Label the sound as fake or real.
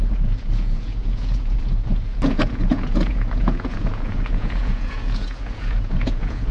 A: fake